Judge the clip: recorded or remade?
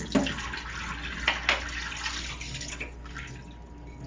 recorded